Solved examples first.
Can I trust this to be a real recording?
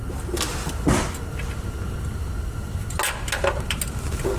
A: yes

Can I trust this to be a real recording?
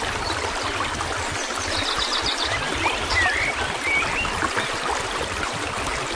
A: no